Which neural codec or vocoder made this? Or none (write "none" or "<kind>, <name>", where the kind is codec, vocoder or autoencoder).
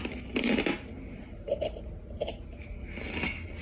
none